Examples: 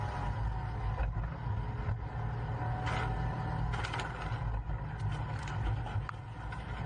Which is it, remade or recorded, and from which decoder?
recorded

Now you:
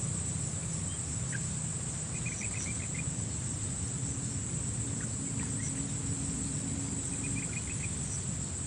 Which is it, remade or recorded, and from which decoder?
recorded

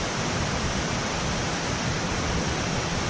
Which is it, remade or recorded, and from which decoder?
recorded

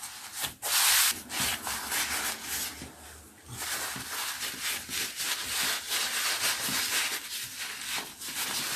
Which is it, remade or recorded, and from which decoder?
recorded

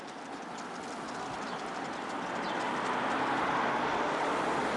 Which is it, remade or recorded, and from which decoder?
recorded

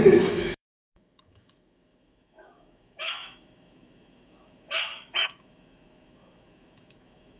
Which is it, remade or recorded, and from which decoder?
remade, autoencoder, DAC-VAE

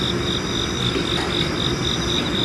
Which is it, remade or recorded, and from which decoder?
recorded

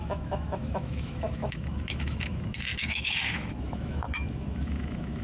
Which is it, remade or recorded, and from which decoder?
remade, autoencoder, DAC-VAE